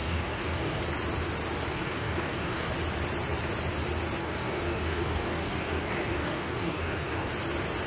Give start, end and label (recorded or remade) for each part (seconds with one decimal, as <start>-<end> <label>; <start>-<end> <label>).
0.0-0.8 remade; 0.8-1.7 recorded; 1.7-2.7 remade; 2.7-4.2 recorded; 4.2-7.3 remade; 7.3-7.9 recorded